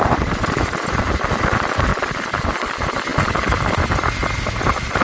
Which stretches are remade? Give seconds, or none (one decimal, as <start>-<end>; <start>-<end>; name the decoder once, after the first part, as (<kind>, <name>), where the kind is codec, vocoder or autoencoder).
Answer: 0.0-1.9 (vocoder, BigVGAN v2); 2.7-3.1; 3.8-4.2